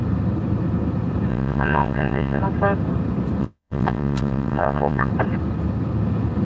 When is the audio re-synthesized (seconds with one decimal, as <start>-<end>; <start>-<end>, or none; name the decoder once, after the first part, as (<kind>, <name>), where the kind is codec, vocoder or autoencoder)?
1.3-2.4 (vocoder, WaveNeXt); 3.4-5.1